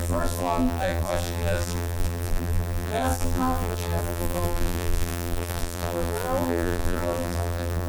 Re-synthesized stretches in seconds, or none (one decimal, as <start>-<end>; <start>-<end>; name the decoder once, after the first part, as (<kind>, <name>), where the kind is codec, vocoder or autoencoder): 0.0-7.9 (vocoder, BigVGAN v2)